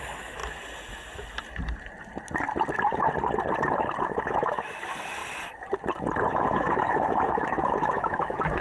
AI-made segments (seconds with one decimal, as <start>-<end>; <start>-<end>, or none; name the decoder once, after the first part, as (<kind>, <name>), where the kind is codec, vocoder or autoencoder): 0.0-0.4 (autoencoder, DAC-VAE); 4.0-5.2; 6.3-8.6

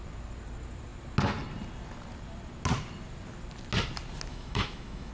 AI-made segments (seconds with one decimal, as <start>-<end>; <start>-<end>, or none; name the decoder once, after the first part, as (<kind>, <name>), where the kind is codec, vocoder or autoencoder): 4.3-5.1 (autoencoder, DAC-VAE)

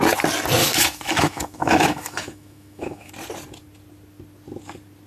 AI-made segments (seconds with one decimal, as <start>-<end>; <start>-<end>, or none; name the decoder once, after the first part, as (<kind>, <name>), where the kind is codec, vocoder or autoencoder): 0.6-3.1 (autoencoder, DAC-VAE)

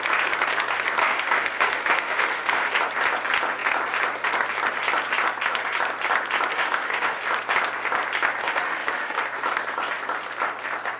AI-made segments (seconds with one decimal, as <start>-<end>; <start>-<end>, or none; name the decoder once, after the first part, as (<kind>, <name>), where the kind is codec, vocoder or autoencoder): 1.0-2.7 (autoencoder, DAC-VAE); 6.5-7.2; 8.4-9.2

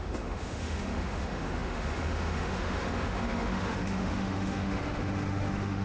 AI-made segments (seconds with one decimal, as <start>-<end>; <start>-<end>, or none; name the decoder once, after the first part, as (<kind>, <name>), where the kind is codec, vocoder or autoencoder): 0.0-5.8 (autoencoder, DAC-VAE)

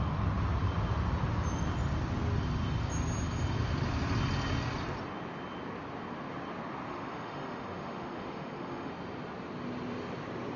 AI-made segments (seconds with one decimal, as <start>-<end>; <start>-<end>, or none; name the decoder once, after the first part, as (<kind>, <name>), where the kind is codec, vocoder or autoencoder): 6.9-8.9 (autoencoder, DAC-VAE)